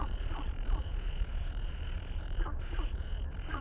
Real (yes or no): no